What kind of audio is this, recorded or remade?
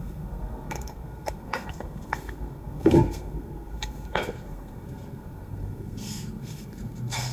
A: remade